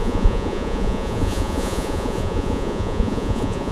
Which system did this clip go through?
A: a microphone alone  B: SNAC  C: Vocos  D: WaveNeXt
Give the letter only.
C